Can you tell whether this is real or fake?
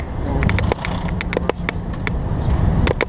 real